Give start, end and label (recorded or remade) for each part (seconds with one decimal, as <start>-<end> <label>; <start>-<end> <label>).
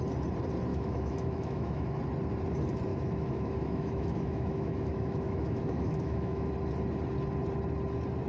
0.0-0.7 recorded; 0.7-2.0 remade; 2.0-2.9 recorded; 2.9-6.5 remade; 6.5-8.3 recorded